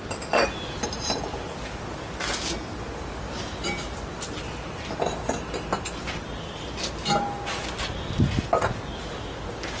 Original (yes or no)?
yes